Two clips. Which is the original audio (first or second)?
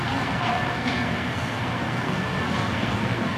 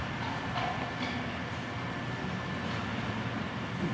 second